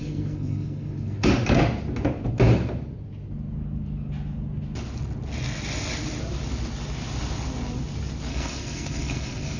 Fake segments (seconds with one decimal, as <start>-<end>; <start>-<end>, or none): 0.0-1.3; 8.3-9.6